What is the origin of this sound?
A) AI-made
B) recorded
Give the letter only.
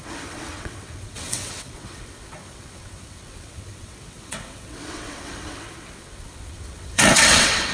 A